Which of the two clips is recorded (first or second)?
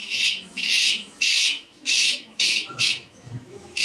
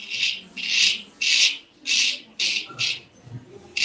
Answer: second